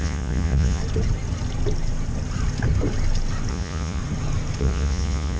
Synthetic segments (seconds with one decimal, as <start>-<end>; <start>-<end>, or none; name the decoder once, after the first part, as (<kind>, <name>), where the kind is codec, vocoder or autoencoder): 0.0-0.8 (vocoder, Vocos); 3.5-4.0; 4.6-5.4